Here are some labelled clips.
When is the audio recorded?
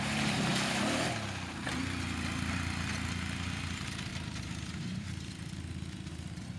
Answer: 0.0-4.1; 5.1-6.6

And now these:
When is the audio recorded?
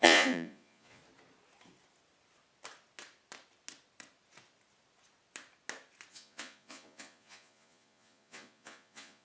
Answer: 1.0-6.1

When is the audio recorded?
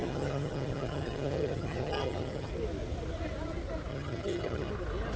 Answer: 2.5-3.9; 4.7-5.2